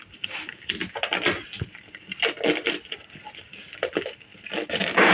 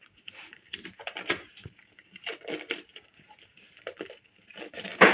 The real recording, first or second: first